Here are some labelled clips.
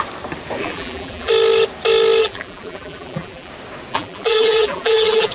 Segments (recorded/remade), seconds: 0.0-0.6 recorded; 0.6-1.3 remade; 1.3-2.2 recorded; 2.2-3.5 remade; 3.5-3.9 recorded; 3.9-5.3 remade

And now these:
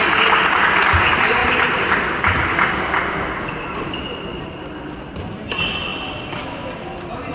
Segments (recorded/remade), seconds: 0.0-1.4 recorded; 1.4-1.9 remade; 1.9-7.3 recorded

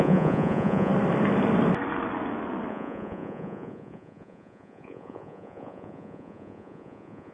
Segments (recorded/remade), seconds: 0.0-0.9 remade; 0.9-2.7 recorded; 2.7-7.3 remade